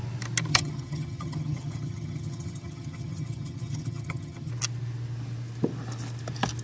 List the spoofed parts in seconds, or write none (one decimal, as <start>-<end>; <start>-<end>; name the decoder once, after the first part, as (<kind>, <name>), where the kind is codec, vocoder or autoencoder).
0.5-4.5 (vocoder, HiFi-GAN)